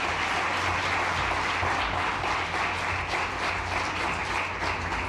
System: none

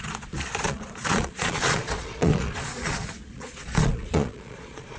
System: vocoder, Vocos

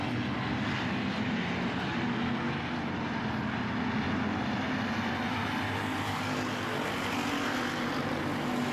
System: none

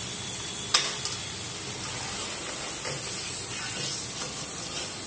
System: none